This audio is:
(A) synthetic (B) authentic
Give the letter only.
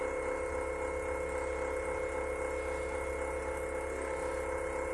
B